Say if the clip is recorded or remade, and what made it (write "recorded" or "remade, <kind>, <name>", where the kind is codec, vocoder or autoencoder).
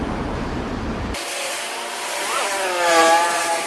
remade, vocoder, BigVGAN v2